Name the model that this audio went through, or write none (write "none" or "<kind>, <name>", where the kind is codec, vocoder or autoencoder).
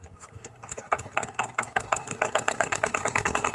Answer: codec, SNAC